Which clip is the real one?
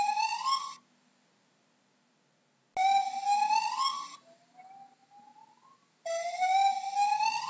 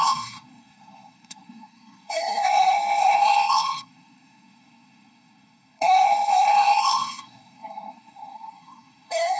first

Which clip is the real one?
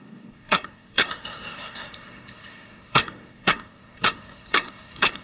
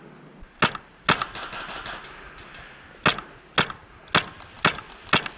second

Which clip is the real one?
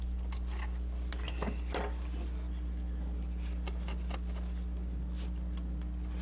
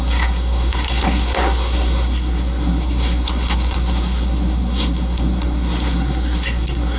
first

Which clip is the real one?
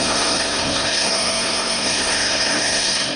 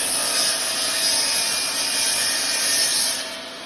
second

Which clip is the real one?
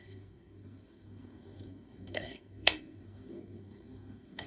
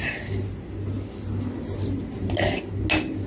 second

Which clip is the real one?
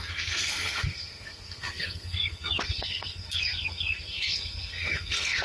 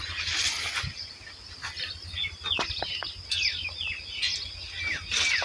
second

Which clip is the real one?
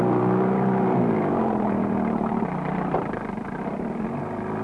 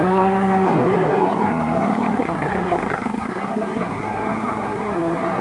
first